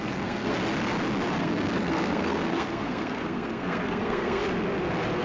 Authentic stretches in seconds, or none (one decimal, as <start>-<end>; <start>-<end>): 0.6-1.4; 4.4-5.2